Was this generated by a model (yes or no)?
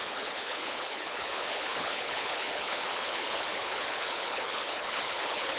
yes